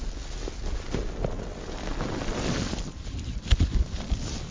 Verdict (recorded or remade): recorded